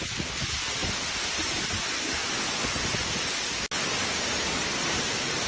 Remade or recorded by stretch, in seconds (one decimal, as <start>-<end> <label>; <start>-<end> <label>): 0.0-2.2 recorded; 2.2-3.4 remade; 3.4-5.5 recorded